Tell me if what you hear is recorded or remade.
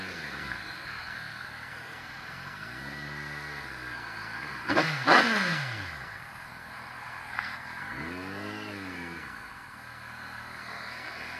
remade